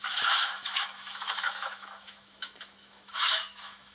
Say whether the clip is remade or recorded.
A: remade